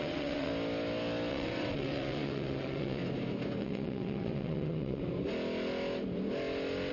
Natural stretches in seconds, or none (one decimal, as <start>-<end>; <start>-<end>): 0.5-1.3; 3.0-3.6; 5.0-6.9